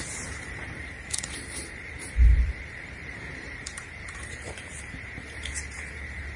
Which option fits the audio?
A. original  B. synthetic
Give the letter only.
B